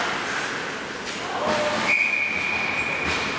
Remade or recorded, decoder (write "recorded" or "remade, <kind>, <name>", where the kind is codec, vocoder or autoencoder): recorded